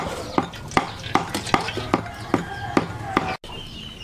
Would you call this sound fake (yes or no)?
no